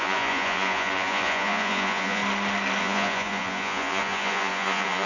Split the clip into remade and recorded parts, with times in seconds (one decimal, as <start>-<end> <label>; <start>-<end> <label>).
0.0-2.2 remade; 2.2-2.8 recorded; 2.8-5.1 remade